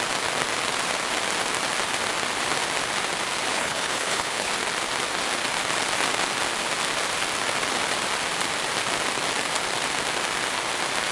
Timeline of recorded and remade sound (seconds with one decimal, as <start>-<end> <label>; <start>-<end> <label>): 0.0-3.5 recorded; 3.5-4.5 remade; 4.5-11.1 recorded